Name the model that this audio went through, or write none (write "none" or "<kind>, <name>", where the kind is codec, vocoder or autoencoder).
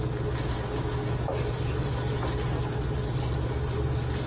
none